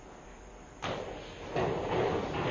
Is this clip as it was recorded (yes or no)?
yes